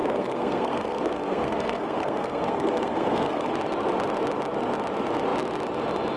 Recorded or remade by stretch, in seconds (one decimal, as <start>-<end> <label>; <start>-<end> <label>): 0.0-3.5 remade; 3.5-6.2 recorded